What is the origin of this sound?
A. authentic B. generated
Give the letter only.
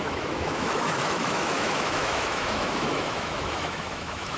B